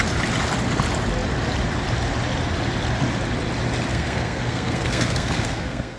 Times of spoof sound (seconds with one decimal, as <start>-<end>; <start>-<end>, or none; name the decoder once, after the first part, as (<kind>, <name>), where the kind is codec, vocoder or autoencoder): 3.9-6.0 (codec, SNAC)